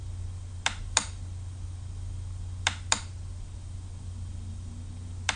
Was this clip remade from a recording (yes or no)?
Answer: no